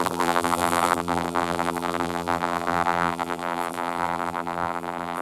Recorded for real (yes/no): no